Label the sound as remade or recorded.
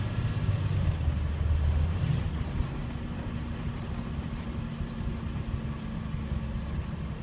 recorded